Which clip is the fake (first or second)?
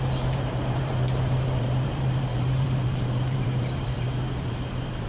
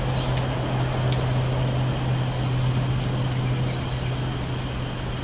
first